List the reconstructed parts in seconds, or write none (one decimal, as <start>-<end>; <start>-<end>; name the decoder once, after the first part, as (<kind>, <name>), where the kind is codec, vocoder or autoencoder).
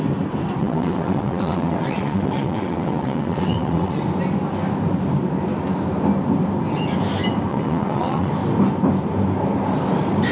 0.6-4.0 (vocoder, WaveNeXt); 7.5-8.3